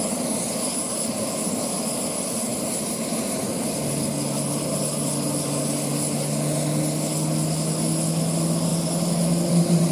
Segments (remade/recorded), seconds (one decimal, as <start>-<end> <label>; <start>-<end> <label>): 0.0-9.9 recorded